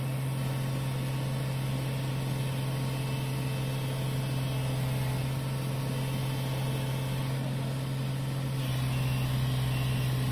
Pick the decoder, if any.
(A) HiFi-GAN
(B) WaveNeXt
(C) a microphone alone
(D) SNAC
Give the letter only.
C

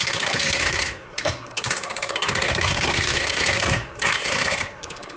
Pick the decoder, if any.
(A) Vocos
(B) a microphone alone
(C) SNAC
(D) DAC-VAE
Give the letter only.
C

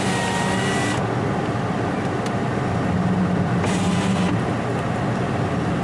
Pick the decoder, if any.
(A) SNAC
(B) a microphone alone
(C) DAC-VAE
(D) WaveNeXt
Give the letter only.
B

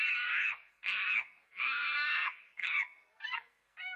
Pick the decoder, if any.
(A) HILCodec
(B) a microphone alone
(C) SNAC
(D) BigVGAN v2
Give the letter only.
C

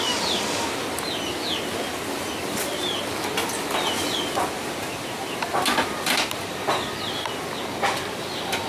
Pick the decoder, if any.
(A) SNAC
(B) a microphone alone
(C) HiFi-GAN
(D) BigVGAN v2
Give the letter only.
B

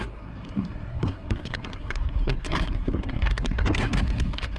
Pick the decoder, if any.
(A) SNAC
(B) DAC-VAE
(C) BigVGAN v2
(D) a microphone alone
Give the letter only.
A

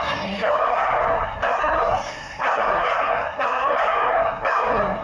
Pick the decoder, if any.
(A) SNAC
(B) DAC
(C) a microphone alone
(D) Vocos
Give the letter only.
A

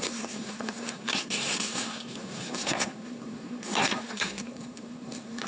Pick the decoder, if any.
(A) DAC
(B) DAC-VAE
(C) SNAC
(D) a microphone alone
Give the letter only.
C